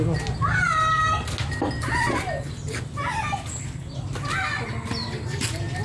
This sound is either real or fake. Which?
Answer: real